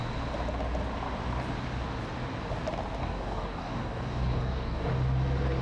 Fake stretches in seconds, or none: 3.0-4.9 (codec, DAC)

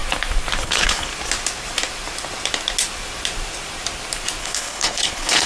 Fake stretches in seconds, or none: 0.6-1.1 (codec, HILCodec); 4.4-5.5